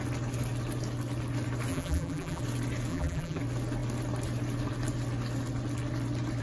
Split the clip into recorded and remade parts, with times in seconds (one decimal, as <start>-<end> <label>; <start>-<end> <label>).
0.0-1.7 recorded; 1.7-2.4 remade; 2.4-2.9 recorded; 2.9-3.4 remade; 3.4-6.4 recorded